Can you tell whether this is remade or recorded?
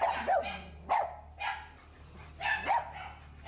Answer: recorded